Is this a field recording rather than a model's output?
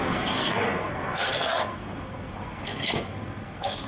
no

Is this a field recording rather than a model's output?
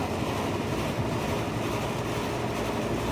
yes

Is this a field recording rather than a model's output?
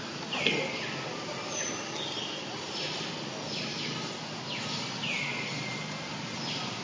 yes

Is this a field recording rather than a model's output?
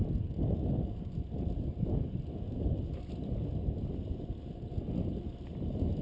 yes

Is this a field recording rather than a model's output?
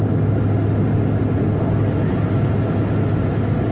yes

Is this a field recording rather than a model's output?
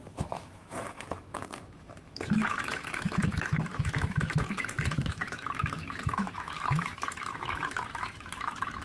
no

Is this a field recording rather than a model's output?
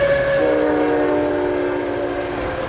yes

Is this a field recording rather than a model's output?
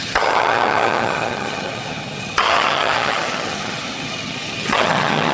no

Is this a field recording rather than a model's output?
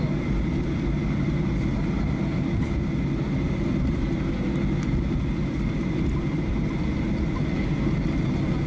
yes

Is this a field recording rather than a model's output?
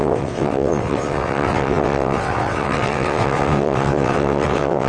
no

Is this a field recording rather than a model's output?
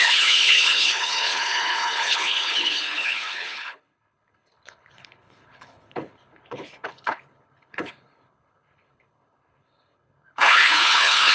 no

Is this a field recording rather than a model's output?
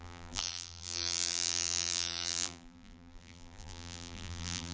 no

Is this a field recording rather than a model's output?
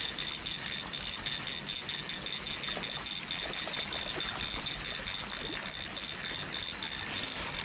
yes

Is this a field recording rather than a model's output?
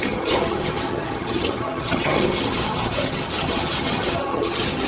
no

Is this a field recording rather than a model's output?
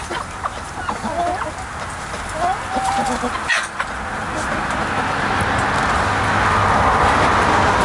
yes